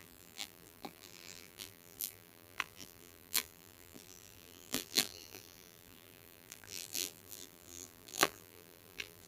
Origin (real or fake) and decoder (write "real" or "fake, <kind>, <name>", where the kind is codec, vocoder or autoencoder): fake, vocoder, BigVGAN v2